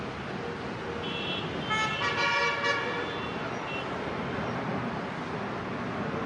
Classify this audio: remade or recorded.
recorded